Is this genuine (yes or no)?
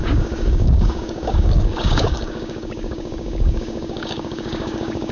no